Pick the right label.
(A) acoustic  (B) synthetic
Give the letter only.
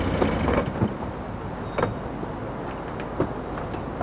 A